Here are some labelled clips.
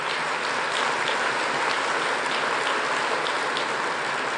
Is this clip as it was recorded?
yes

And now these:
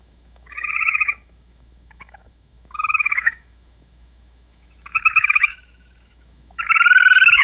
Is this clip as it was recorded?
no